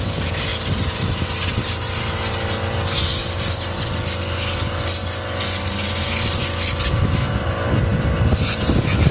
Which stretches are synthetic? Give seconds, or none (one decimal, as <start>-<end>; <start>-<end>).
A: none